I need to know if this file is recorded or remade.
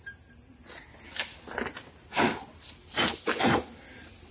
recorded